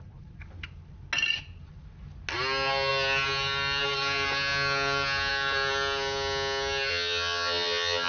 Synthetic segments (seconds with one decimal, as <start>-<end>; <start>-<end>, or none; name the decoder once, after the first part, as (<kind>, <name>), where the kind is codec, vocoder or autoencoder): 6.9-8.1 (vocoder, HiFi-GAN)